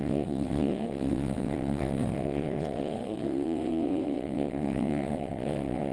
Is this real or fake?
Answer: fake